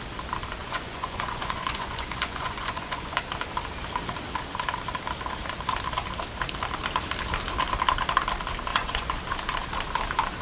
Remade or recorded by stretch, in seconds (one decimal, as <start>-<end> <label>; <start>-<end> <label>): 0.0-0.6 recorded; 0.6-3.2 remade; 3.2-8.7 recorded; 8.7-9.2 remade; 9.2-10.4 recorded